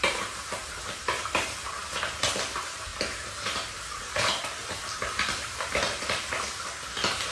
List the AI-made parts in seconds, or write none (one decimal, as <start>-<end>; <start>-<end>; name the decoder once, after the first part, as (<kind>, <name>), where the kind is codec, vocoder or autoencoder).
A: 0.0-7.3 (vocoder, BigVGAN v2)